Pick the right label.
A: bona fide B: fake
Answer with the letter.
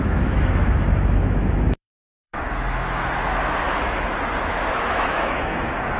B